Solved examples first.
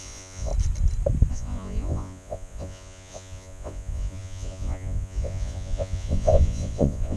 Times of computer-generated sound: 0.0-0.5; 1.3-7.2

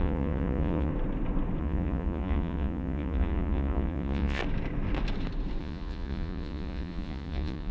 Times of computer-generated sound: 0.0-0.9; 1.6-4.4; 5.6-7.7

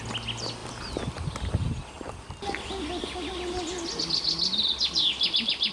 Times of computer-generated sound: none